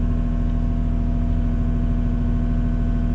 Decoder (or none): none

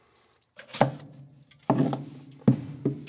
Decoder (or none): none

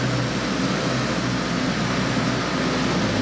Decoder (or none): none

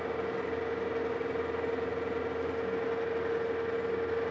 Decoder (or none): none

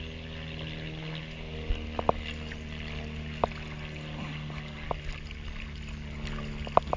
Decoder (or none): none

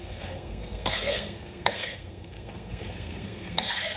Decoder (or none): codec, SNAC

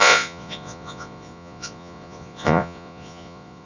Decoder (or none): vocoder, Vocos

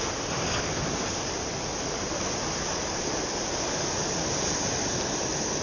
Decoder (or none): none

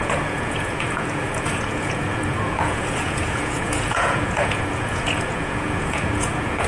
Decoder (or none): vocoder, Vocos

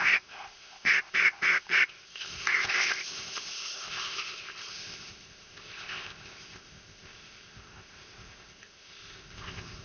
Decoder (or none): codec, ZipCodec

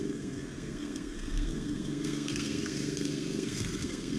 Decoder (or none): codec, SNAC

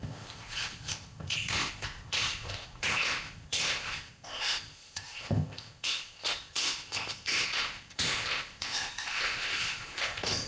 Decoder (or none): codec, ZipCodec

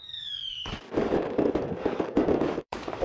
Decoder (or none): codec, DAC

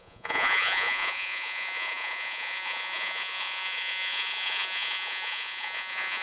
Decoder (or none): vocoder, Vocos